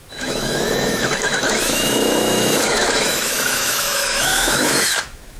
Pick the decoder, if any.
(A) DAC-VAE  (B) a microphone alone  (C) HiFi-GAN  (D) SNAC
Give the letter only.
A